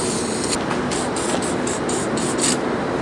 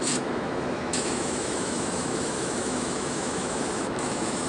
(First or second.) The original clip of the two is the first